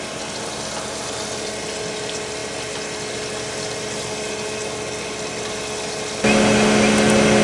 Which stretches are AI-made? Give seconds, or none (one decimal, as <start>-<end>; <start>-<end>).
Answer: none